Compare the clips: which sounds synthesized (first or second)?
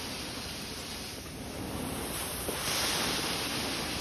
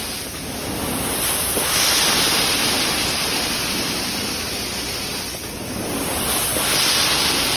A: first